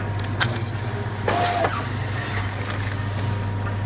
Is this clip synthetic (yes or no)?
no